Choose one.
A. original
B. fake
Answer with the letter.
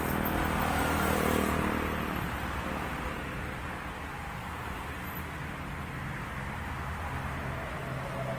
A